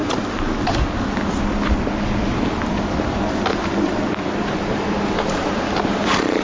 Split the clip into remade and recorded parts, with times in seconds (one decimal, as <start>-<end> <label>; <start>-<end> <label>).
0.0-1.0 remade; 1.0-3.6 recorded; 3.6-6.4 remade